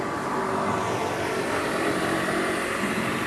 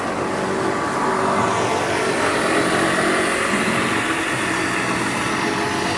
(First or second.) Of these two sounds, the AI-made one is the first